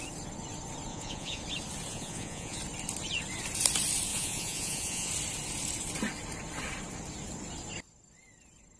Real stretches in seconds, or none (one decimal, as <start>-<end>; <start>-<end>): 0.0-0.9; 1.4-1.9; 2.6-4.1; 5.1-8.8